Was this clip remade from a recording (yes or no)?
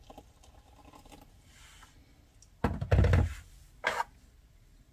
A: no